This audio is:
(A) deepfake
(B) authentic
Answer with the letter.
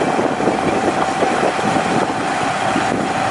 B